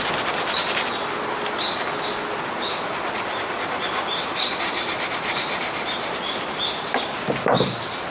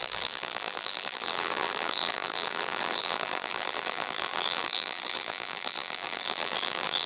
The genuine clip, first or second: first